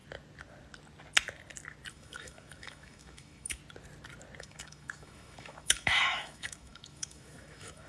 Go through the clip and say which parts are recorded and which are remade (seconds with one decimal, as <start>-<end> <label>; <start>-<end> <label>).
0.0-1.9 recorded; 1.9-3.6 remade; 3.6-4.4 recorded; 4.4-7.9 remade